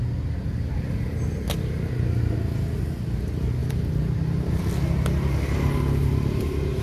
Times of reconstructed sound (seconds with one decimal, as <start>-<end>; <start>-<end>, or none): 3.6-4.6